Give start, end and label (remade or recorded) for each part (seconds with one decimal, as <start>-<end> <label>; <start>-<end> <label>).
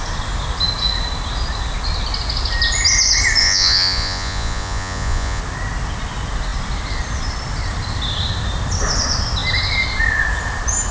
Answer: 0.0-3.4 recorded; 3.4-5.4 remade; 5.4-10.9 recorded